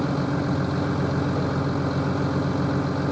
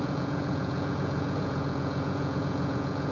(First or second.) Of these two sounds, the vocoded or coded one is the second